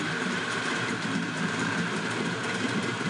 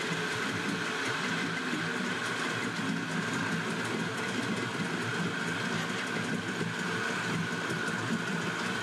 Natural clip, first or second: second